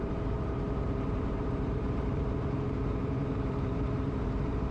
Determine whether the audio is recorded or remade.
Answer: remade